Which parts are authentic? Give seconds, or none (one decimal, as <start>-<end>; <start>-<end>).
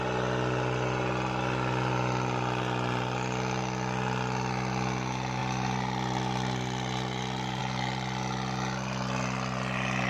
0.0-5.4; 7.6-10.1